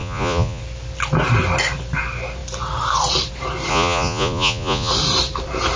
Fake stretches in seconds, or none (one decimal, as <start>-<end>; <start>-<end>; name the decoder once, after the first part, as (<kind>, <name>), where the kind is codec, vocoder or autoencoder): 0.0-0.6 (vocoder, Vocos); 3.7-4.9